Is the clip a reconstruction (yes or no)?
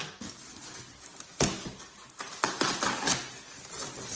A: no